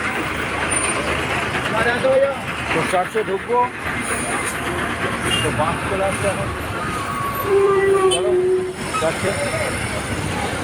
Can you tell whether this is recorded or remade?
remade